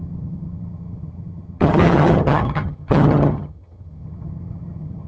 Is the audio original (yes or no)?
no